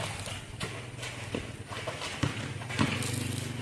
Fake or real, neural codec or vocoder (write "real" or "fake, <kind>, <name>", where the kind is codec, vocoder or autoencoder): real